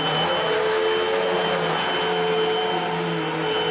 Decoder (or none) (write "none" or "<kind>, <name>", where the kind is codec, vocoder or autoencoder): none